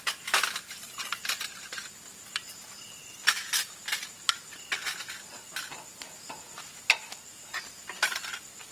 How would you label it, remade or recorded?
recorded